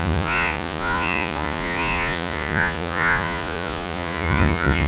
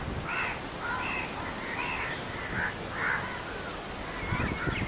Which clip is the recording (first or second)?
second